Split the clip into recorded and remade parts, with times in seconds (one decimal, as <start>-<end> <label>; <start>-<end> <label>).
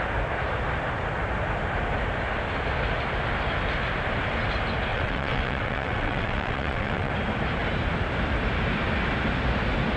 0.0-4.9 recorded; 4.9-7.1 remade; 7.1-10.0 recorded